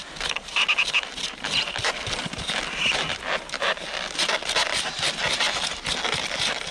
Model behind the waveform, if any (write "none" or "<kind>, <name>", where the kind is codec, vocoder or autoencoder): none